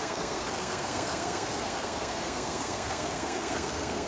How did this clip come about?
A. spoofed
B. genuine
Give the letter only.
A